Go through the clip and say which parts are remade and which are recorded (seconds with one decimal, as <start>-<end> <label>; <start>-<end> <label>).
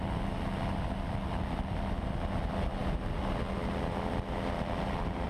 0.0-5.3 recorded